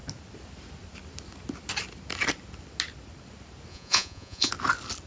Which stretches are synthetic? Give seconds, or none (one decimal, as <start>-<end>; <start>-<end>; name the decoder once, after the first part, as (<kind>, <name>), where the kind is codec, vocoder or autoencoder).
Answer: 3.7-4.5 (vocoder, Vocos)